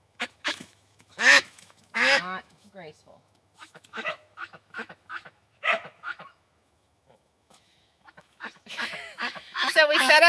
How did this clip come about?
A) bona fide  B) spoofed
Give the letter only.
B